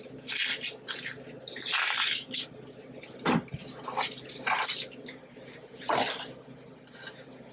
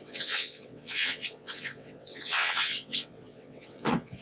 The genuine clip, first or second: first